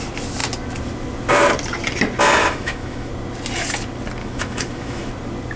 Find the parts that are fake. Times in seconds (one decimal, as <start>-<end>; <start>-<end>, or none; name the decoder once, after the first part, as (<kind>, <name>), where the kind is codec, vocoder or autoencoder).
2.4-3.1 (autoencoder, DAC-VAE); 4.2-5.1